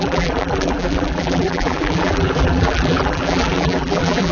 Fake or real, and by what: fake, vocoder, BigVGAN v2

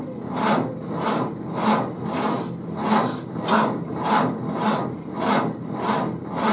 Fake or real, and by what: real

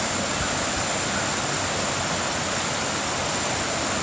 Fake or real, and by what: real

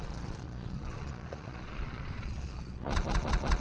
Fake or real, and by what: fake, vocoder, Vocos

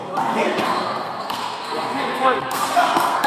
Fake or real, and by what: fake, codec, SNAC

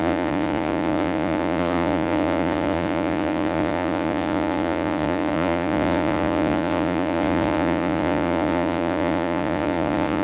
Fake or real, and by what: fake, vocoder, Vocos